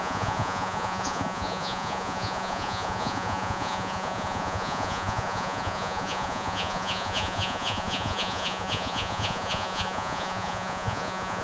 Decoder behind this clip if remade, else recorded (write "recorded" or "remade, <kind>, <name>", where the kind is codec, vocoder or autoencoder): remade, vocoder, Vocos